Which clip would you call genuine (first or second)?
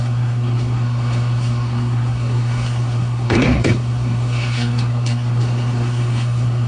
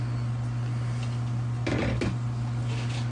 second